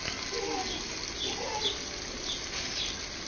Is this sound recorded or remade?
recorded